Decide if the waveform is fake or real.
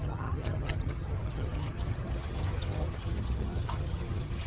fake